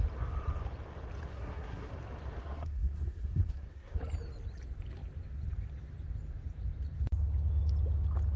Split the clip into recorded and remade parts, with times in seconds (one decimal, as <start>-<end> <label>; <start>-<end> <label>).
0.0-1.3 recorded; 1.3-1.9 remade; 1.9-2.4 recorded; 2.4-4.0 remade; 4.0-8.4 recorded